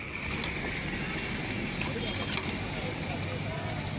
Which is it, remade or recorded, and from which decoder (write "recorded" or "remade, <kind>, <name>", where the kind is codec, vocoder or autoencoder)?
recorded